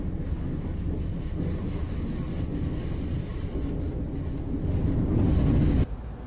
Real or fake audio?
real